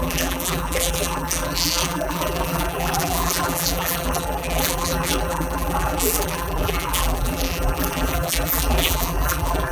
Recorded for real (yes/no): no